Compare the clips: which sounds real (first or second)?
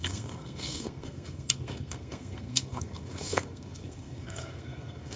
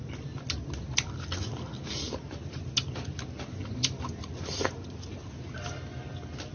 second